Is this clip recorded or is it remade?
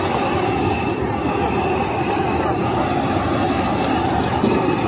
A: recorded